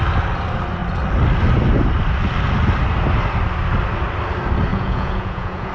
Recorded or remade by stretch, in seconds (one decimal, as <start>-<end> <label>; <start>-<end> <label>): 0.0-4.7 recorded; 4.7-5.7 remade